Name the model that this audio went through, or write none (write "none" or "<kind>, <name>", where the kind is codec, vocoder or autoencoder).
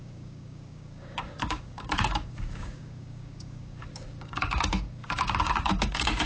codec, DAC